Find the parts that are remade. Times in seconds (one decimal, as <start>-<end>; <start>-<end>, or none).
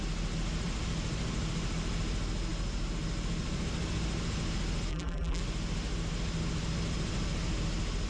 4.9-5.4